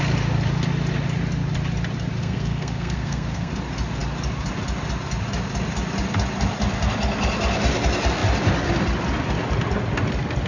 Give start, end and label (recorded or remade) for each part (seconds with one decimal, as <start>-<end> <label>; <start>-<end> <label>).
0.0-2.2 recorded; 2.2-3.5 remade; 3.5-10.5 recorded